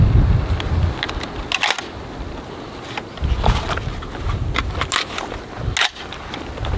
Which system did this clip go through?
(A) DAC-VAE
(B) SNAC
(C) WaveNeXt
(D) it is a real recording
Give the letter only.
D